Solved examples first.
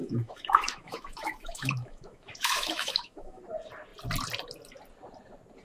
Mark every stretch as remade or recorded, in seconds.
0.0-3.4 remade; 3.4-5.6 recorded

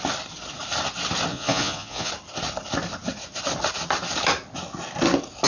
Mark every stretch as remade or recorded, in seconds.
0.0-1.3 recorded; 1.3-2.1 remade; 2.1-5.5 recorded